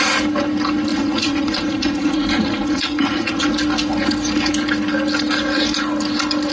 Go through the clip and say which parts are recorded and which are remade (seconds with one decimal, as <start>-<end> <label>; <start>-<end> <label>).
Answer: 0.0-0.9 recorded; 0.9-3.5 remade; 3.5-6.5 recorded